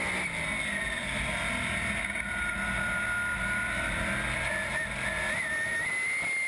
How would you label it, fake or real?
real